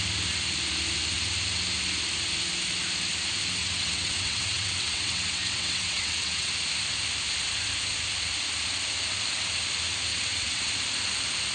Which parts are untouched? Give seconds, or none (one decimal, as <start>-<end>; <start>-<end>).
0.0-3.6; 6.5-10.1; 10.7-11.5